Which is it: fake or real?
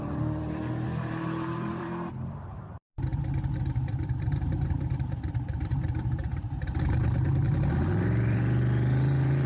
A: fake